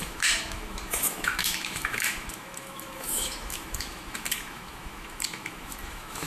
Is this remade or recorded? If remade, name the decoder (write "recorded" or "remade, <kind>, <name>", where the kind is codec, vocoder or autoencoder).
remade, autoencoder, DAC-VAE